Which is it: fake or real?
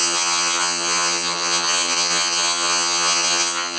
fake